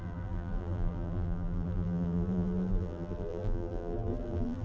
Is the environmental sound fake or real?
fake